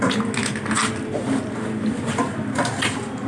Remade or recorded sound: recorded